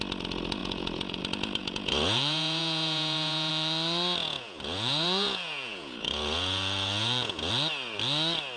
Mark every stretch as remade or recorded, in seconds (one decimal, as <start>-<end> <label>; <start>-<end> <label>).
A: 0.0-0.6 recorded; 0.6-1.2 remade; 1.2-1.6 recorded; 1.6-3.5 remade; 3.5-4.2 recorded; 4.2-7.5 remade; 7.5-8.6 recorded